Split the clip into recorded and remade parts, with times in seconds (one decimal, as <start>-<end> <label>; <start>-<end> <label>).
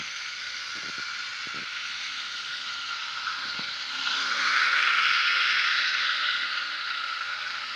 0.0-0.6 remade; 0.6-1.6 recorded; 1.6-7.8 remade